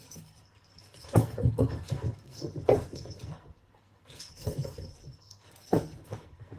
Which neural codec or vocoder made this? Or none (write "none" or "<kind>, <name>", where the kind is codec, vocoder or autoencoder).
codec, SNAC